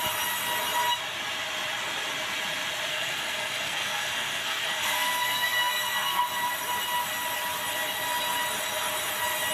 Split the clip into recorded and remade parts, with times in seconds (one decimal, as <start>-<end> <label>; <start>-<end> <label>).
0.0-2.9 recorded; 2.9-6.2 remade; 6.2-9.5 recorded